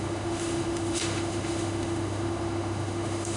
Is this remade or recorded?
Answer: remade